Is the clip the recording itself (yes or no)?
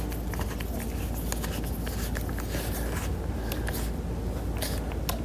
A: yes